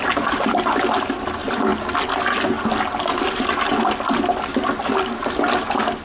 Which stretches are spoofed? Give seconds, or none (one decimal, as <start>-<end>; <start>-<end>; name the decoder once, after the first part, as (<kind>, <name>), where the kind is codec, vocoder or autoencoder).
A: none